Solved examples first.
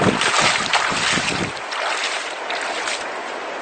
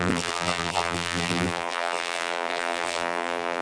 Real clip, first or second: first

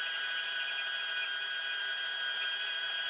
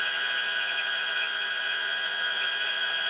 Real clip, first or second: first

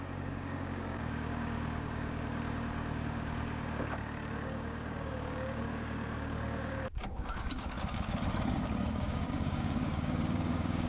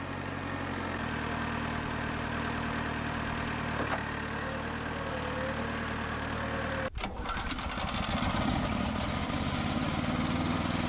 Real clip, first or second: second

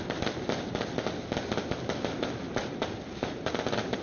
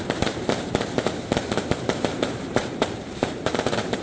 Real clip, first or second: first